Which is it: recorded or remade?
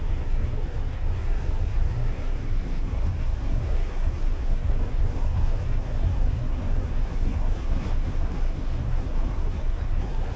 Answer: remade